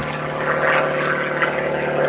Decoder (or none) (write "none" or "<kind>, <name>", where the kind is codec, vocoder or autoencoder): none